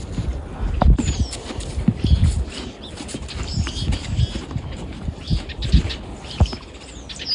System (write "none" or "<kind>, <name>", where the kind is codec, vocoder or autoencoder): none